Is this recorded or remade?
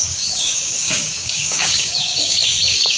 remade